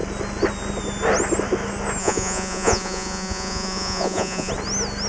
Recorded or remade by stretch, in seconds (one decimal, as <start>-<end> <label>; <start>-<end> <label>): 0.0-2.0 recorded; 2.0-4.5 remade; 4.5-5.1 recorded